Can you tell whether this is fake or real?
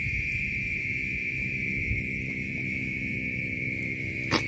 real